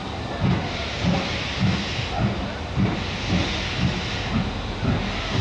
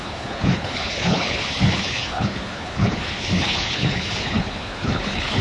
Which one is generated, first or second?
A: second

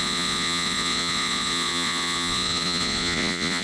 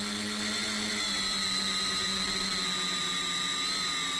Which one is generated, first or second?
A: first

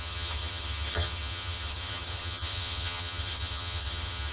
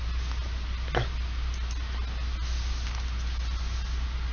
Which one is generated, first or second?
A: first